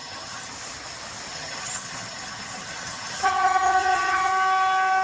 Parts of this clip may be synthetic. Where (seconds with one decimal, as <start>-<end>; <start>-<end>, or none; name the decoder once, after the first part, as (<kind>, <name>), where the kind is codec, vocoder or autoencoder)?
0.0-0.5 (vocoder, HiFi-GAN); 1.3-4.3